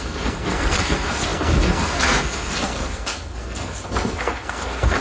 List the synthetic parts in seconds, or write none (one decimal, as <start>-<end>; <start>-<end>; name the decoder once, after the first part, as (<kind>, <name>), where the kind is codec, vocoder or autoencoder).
0.0-5.0 (codec, SNAC)